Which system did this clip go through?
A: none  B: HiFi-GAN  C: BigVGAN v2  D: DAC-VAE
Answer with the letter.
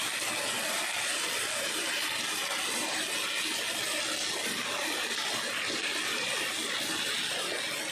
A